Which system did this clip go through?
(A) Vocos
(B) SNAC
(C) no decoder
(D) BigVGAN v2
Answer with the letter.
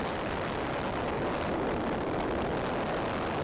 C